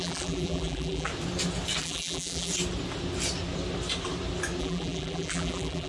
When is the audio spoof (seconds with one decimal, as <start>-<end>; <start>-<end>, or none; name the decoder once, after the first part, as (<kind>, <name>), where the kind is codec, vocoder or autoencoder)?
0.0-1.1 (vocoder, BigVGAN v2); 1.8-2.5; 4.6-5.9